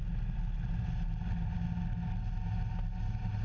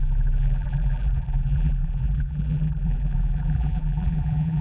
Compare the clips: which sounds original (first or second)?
first